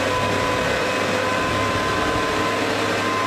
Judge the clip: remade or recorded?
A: recorded